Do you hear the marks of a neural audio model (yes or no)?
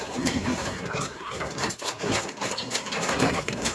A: yes